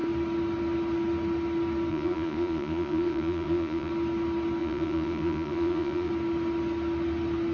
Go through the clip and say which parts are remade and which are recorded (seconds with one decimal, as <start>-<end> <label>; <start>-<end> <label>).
0.0-1.9 recorded; 1.9-3.9 remade; 3.9-4.6 recorded; 4.6-6.1 remade; 6.1-7.5 recorded